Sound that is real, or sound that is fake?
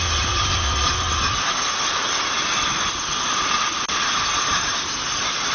real